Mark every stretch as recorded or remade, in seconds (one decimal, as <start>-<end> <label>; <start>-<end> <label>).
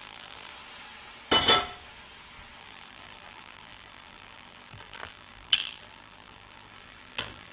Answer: 0.0-0.5 remade; 0.5-2.6 recorded; 2.6-7.5 remade